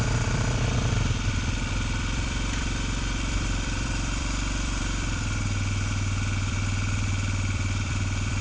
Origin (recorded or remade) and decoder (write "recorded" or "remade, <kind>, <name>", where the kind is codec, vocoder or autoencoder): remade, vocoder, BigVGAN v2